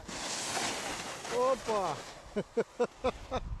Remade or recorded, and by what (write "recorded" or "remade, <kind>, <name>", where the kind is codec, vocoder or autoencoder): recorded